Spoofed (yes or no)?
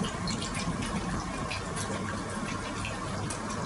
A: no